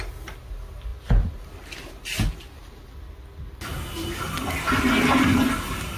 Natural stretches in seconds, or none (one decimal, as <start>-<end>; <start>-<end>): 0.0-6.0